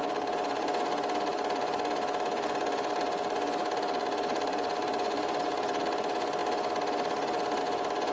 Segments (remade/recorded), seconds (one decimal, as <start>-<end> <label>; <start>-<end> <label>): 0.0-8.1 recorded